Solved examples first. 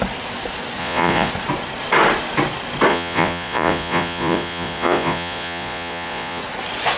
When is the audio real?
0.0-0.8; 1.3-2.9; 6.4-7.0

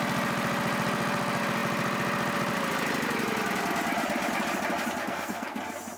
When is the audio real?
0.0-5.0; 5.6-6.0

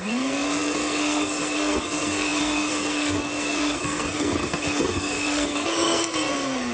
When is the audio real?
none

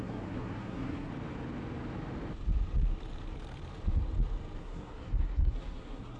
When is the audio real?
1.1-4.6

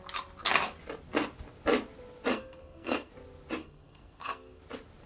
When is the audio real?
0.0-2.3; 3.1-3.6; 4.6-5.1

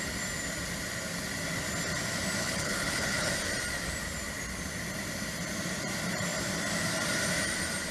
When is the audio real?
0.0-2.4; 3.3-7.9

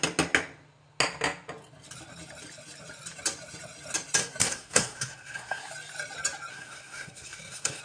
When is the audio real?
0.0-4.4; 5.7-6.5

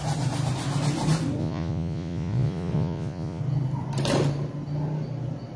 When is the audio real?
0.0-1.4; 3.4-5.6